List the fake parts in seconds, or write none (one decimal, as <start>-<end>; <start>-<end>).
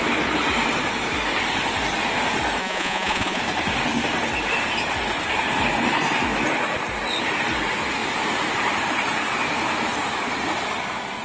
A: 2.6-3.4